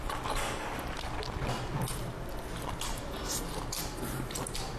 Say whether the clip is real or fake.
real